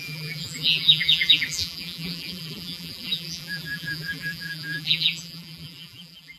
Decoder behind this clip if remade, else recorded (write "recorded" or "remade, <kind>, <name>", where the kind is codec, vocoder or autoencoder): remade, vocoder, BigVGAN v2